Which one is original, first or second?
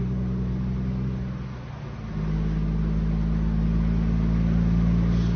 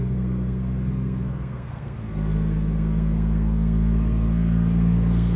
first